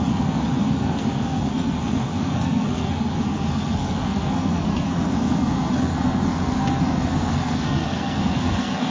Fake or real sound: fake